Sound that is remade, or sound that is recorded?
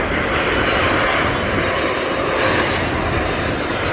recorded